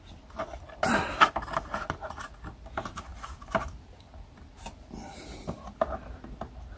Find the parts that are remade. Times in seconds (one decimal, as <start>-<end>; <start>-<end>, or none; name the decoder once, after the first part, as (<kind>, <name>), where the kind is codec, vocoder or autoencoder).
none